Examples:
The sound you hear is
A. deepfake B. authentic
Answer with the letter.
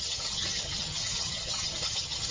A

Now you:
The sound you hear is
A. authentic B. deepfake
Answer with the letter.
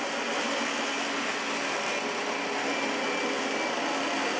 A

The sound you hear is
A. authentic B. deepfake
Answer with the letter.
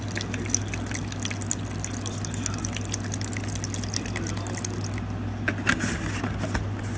A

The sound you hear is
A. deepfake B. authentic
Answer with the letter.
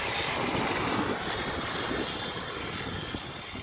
B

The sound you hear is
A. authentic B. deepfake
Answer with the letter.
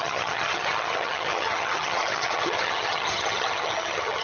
B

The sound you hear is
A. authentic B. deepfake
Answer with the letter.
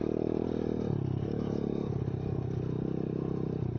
A